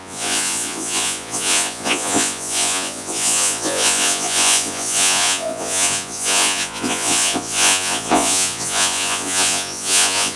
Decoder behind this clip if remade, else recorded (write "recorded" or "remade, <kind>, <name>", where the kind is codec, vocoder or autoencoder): remade, vocoder, Vocos